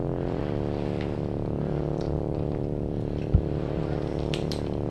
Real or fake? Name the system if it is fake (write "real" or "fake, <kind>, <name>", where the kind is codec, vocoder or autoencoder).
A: fake, vocoder, BigVGAN v2